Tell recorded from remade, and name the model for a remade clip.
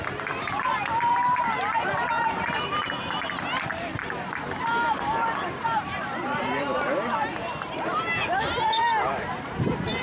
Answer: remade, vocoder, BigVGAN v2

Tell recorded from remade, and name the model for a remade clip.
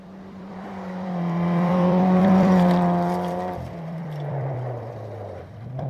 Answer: remade, vocoder, BigVGAN v2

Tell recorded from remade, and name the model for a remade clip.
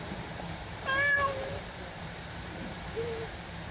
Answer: remade, vocoder, BigVGAN v2